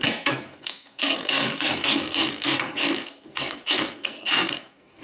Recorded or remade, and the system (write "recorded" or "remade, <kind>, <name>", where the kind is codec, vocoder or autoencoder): remade, codec, SNAC